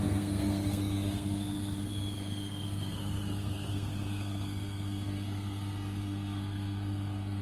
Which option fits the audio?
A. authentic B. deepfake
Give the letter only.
B